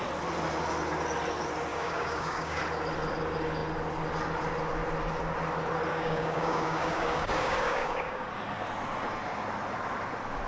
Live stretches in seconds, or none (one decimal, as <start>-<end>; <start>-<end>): 0.0-1.7; 2.6-5.9; 8.3-10.5